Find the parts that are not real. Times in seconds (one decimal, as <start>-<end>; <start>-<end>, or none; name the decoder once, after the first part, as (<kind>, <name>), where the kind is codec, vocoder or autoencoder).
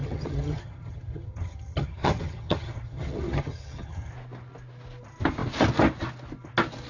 0.0-4.1 (vocoder, HiFi-GAN)